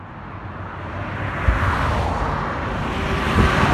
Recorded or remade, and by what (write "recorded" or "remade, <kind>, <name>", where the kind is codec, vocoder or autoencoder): recorded